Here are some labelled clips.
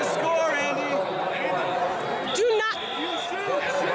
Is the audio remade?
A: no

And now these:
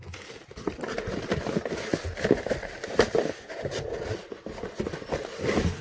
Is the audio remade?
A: no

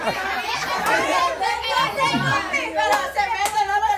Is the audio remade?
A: no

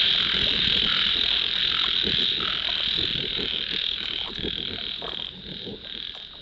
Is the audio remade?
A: no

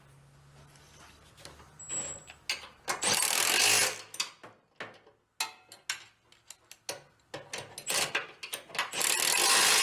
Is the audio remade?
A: no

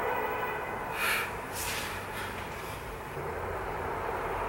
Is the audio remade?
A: yes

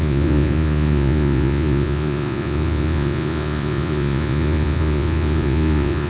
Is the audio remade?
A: yes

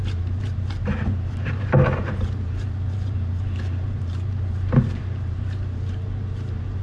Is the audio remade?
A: yes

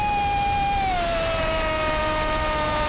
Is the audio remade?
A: yes